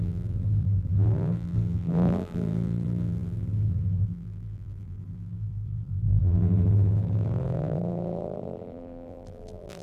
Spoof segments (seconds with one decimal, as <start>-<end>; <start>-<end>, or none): 0.0-9.8